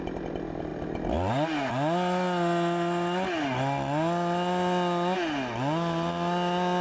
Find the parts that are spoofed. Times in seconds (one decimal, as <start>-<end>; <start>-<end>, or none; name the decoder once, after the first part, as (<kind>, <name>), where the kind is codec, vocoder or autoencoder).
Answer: none